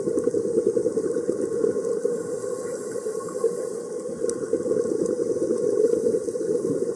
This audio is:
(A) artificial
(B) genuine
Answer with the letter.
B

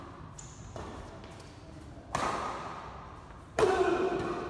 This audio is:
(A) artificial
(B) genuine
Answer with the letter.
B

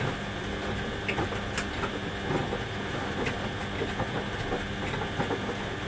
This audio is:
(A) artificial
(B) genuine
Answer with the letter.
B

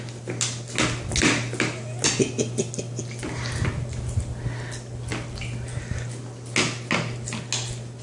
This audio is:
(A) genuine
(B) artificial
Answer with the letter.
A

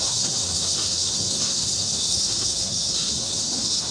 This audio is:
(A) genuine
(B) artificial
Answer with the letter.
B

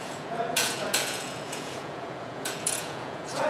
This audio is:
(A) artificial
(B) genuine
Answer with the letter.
A